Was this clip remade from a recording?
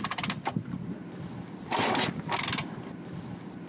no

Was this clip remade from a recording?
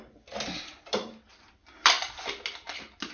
no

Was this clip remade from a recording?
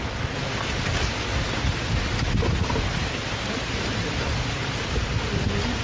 no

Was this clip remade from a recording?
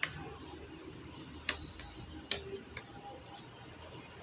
no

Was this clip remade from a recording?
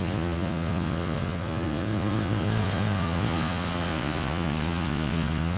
yes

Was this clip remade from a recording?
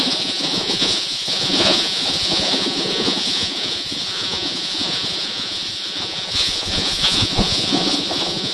yes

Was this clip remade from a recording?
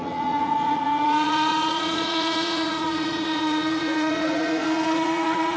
yes